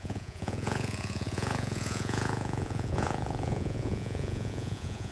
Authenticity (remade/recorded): remade